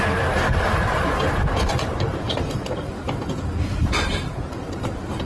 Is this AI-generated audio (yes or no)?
yes